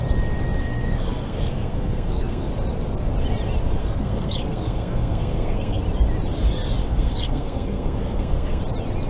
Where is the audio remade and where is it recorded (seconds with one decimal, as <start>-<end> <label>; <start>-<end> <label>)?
0.0-0.6 recorded; 0.6-2.5 remade; 2.5-3.8 recorded; 3.8-5.8 remade; 5.8-6.8 recorded; 6.8-8.6 remade; 8.6-9.1 recorded